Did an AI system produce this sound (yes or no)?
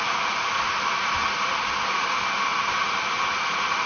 no